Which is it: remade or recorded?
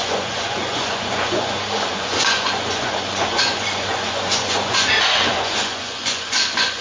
remade